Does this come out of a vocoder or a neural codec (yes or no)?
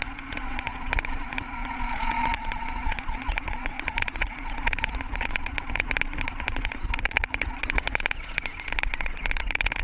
yes